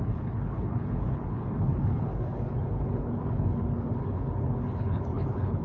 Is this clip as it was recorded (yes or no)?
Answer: no